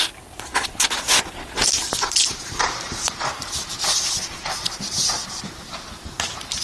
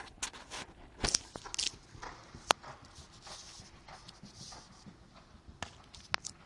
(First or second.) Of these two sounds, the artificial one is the first